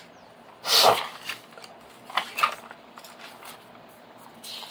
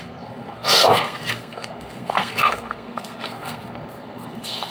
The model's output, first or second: second